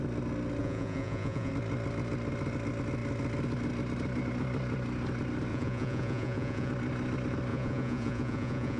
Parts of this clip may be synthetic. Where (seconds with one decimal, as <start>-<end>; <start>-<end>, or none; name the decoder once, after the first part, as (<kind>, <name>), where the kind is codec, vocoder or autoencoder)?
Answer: 0.6-1.5 (vocoder, Vocos); 5.5-6.7; 7.5-8.8